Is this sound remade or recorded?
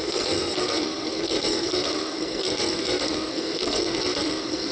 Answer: remade